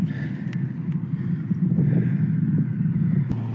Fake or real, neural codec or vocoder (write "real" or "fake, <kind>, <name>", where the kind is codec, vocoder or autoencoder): real